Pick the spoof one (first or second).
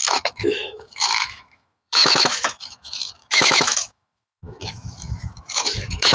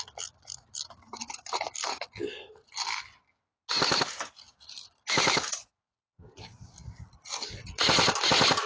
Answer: first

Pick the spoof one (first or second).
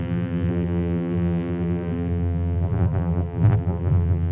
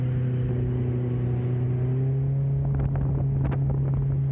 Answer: first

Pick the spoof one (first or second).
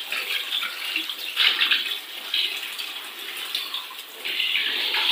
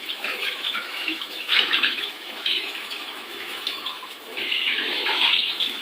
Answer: second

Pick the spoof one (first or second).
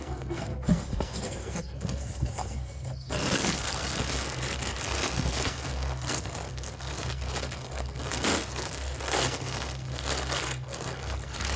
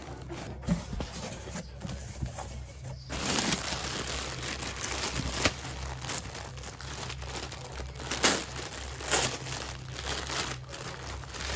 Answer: first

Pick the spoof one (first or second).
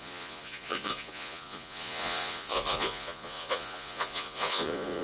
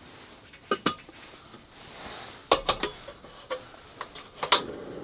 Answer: first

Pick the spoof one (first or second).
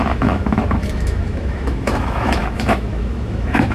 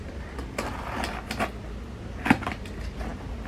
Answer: first